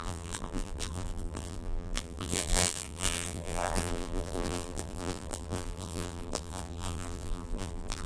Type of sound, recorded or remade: remade